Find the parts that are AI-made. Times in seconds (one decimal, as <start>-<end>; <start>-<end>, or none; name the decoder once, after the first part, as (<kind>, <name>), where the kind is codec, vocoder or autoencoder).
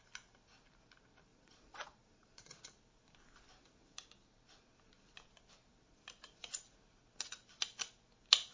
1.3-2.8 (vocoder, Vocos)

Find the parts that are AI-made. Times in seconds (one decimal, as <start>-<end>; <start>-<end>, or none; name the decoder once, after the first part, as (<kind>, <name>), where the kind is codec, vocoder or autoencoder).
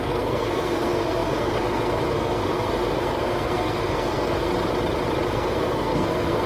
0.0-4.5 (codec, SNAC); 5.3-6.5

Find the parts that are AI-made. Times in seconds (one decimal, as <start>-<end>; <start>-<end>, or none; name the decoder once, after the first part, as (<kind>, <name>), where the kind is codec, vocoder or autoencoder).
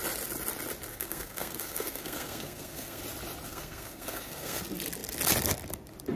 0.9-3.0 (codec, SNAC); 3.5-4.6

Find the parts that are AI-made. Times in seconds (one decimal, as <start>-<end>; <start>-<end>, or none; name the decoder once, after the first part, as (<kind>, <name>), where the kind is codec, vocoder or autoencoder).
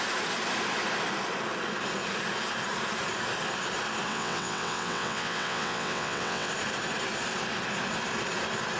4.1-6.5 (vocoder, WaveNeXt)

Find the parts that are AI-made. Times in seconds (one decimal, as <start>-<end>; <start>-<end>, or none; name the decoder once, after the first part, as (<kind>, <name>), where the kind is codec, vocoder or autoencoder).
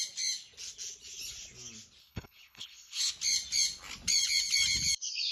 2.0-3.1 (codec, HILCodec)